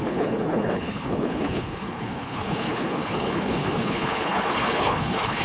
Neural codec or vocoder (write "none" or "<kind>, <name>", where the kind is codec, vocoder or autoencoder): codec, HILCodec